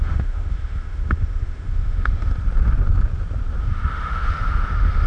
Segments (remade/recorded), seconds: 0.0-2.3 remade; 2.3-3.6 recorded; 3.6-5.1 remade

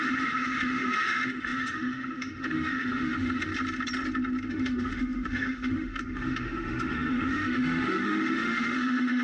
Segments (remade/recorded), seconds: 0.0-3.5 remade; 3.5-4.5 recorded; 4.5-9.2 remade

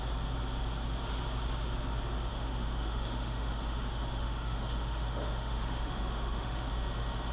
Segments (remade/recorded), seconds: 0.0-2.3 recorded; 2.3-6.7 remade; 6.7-7.3 recorded

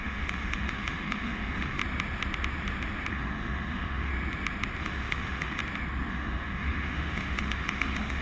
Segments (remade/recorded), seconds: 0.0-1.8 remade; 1.8-3.1 recorded; 3.1-4.1 remade; 4.1-4.8 recorded; 4.8-5.6 remade; 5.6-6.1 recorded; 6.1-8.2 remade

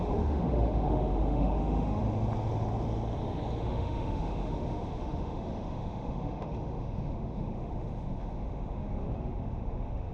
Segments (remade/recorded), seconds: 0.0-2.0 remade; 2.0-3.6 recorded; 3.6-10.1 remade